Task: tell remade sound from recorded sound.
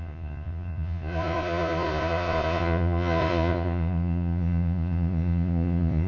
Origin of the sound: remade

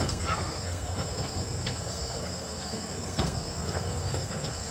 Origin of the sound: remade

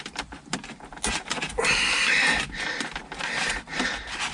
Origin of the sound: recorded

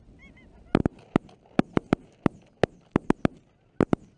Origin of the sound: recorded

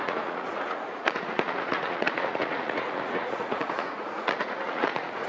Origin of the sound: remade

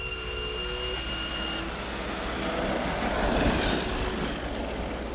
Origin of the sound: recorded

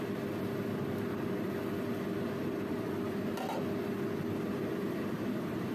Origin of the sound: recorded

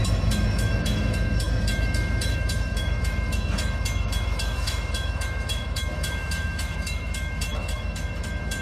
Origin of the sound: remade